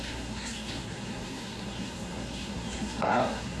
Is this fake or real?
fake